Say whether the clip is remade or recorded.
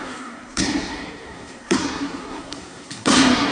remade